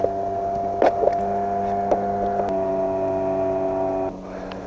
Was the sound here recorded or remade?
recorded